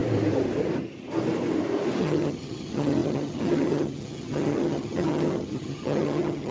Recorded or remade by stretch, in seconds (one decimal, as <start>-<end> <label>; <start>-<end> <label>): 0.0-2.0 recorded; 2.0-6.5 remade